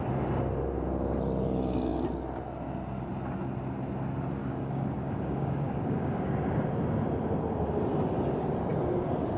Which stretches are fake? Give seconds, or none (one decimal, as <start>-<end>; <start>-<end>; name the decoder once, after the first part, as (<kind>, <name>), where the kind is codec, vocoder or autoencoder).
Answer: 4.4-6.3 (codec, DAC)